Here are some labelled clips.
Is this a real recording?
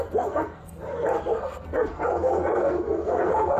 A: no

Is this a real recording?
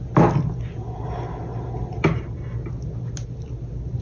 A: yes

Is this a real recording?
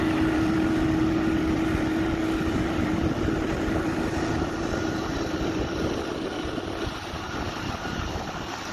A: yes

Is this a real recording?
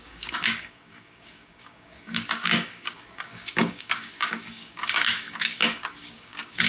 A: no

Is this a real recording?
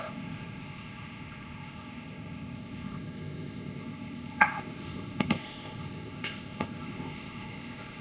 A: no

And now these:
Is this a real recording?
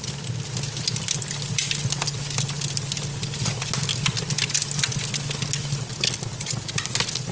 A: yes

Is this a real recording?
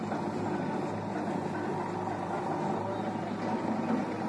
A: yes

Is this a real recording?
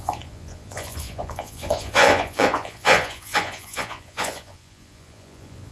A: no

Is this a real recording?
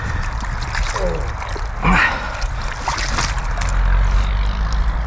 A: yes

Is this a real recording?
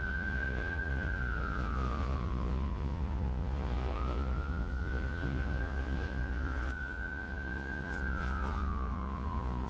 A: no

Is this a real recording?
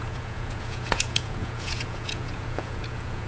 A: no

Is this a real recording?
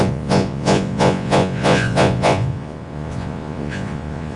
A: no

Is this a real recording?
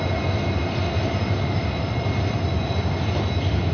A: yes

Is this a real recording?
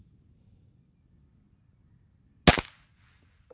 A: yes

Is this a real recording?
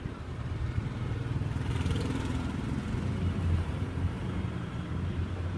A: no